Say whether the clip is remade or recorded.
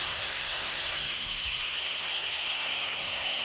remade